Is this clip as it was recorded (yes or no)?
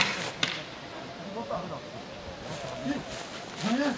yes